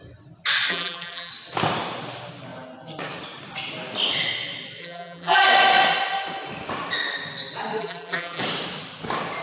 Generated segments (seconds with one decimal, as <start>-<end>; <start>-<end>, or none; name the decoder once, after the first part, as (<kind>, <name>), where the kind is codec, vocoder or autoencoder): 0.7-1.3 (vocoder, BigVGAN v2); 4.8-5.4; 7.8-8.4